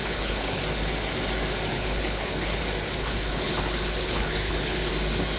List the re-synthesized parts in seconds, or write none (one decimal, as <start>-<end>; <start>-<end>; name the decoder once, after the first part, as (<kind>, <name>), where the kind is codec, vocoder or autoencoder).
0.0-0.6 (codec, HILCodec); 1.7-2.6; 3.0-4.9